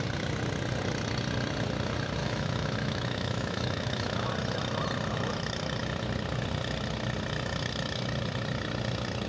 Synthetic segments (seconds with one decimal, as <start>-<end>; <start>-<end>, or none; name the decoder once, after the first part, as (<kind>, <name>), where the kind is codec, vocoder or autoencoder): 2.2-4.3 (autoencoder, DAC-VAE)